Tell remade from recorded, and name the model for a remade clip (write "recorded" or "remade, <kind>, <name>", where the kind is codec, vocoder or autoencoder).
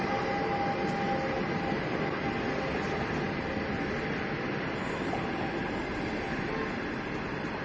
recorded